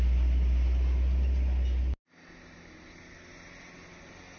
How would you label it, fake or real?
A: real